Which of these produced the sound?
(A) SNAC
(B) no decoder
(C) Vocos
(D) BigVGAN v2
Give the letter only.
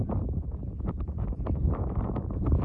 D